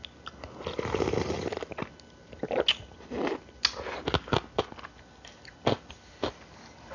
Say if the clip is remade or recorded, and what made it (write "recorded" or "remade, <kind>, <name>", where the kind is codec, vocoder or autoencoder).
recorded